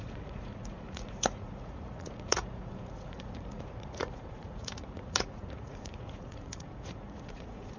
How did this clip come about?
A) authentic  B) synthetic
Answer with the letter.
B